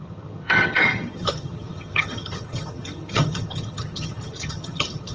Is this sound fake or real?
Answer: fake